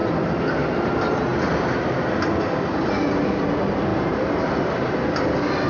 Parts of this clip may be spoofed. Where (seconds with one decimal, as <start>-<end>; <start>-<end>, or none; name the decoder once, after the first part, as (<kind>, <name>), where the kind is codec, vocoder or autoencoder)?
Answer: 3.9-4.9 (vocoder, BigVGAN v2)